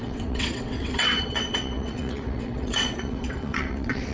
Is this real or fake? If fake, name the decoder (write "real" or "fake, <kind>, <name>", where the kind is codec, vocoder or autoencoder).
fake, vocoder, WaveNeXt